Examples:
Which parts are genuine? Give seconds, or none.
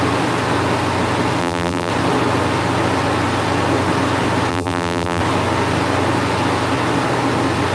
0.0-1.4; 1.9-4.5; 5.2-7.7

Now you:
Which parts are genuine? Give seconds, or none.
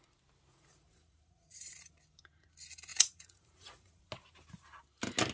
0.0-0.5; 1.9-2.9; 4.0-5.3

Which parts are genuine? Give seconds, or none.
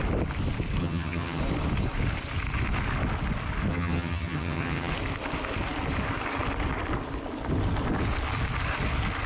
0.0-0.8; 1.4-3.7; 4.9-9.3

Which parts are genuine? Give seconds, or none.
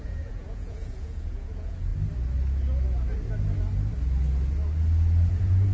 1.9-5.3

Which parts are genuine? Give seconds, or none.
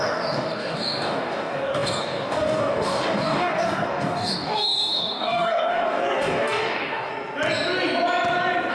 7.1-8.7